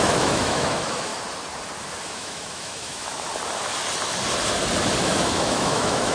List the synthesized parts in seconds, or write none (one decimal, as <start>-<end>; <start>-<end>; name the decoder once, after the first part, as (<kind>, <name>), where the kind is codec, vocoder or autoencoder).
0.0-1.1 (autoencoder, DAC-VAE); 2.0-3.3; 5.0-6.1